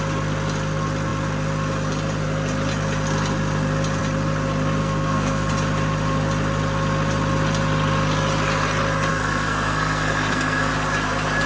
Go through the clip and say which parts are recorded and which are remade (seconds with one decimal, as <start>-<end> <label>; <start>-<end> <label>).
0.0-4.8 recorded; 4.8-5.5 remade; 5.5-9.1 recorded; 9.1-10.7 remade; 10.7-11.5 recorded